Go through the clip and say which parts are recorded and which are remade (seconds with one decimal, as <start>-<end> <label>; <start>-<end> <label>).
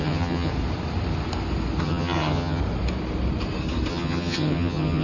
0.0-0.5 remade; 0.5-1.8 recorded; 1.8-2.6 remade; 2.6-3.9 recorded; 3.9-5.0 remade